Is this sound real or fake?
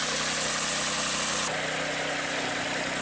real